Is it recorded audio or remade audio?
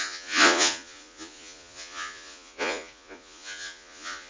remade